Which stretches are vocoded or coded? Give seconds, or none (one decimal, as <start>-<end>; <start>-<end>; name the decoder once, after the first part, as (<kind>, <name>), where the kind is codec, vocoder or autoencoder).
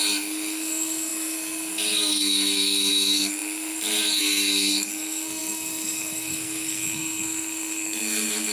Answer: 0.0-8.5 (codec, SNAC)